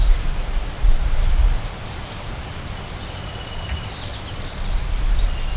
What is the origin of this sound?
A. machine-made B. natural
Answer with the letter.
B